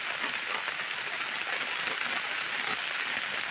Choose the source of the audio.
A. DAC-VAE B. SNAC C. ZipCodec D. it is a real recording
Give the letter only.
D